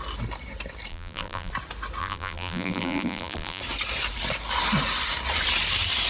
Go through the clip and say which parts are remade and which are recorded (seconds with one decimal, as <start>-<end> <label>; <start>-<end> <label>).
0.0-0.9 recorded; 0.9-1.5 remade; 1.5-2.0 recorded; 2.0-3.6 remade; 3.6-6.1 recorded